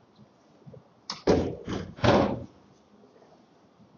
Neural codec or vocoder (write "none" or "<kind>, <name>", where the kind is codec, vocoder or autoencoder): none